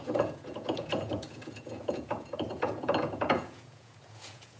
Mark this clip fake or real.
fake